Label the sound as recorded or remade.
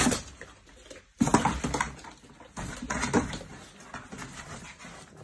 recorded